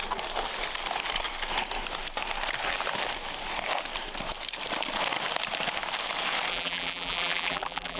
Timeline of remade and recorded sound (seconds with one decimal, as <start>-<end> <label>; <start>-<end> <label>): 0.0-6.5 recorded; 6.5-8.0 remade